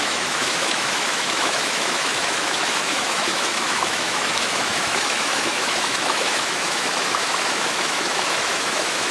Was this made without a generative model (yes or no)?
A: no